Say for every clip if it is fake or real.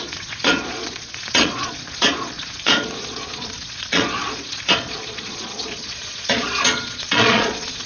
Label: fake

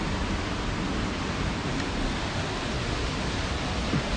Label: real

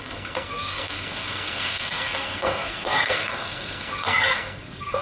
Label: fake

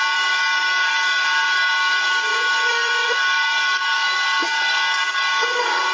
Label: fake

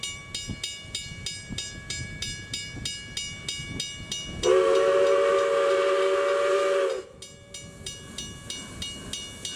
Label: real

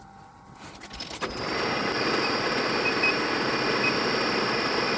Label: real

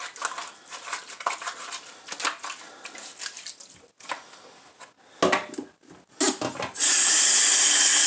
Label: real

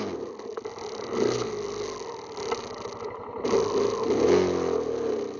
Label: real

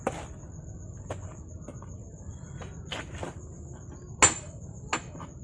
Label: real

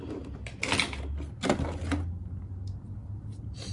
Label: real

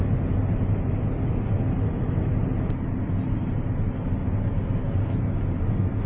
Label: real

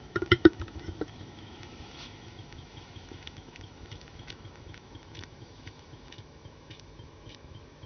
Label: fake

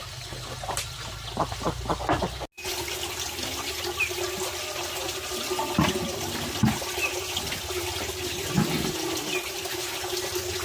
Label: real